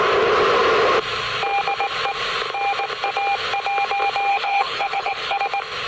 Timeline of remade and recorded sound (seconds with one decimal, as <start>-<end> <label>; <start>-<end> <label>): 0.0-4.3 recorded; 4.3-5.4 remade; 5.4-5.9 recorded